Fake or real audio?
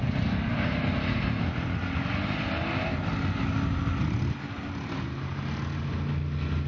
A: real